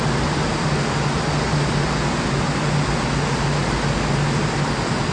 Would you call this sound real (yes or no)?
yes